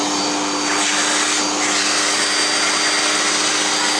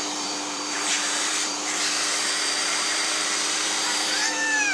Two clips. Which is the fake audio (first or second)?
second